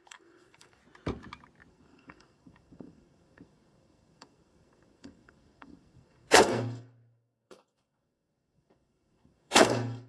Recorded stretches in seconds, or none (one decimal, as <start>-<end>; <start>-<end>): 0.8-1.7